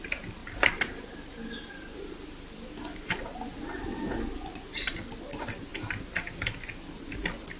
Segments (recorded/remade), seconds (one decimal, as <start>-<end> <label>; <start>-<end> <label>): 0.0-0.4 recorded; 0.4-4.1 remade; 4.1-7.6 recorded